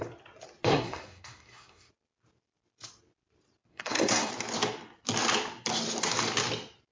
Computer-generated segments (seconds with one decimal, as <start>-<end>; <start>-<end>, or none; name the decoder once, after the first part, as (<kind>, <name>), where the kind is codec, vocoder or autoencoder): 0.7-1.9 (codec, SNAC); 3.7-4.3